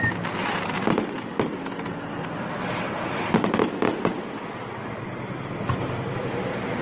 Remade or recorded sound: recorded